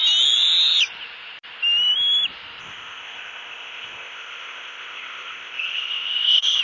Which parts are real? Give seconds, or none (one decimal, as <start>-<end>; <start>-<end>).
0.0-2.6